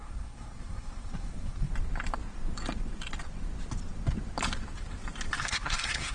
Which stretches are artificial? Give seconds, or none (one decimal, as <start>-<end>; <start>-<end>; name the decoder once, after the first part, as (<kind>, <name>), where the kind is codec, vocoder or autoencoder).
0.0-1.7 (codec, SNAC); 5.4-6.1